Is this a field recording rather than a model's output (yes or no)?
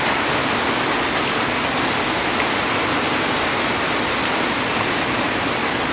yes